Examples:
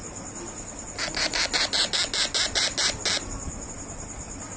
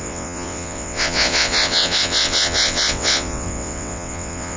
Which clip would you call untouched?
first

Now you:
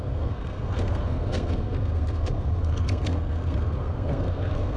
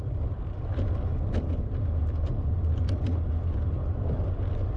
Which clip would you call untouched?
second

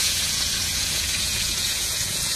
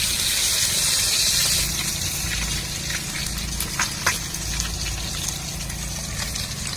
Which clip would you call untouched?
second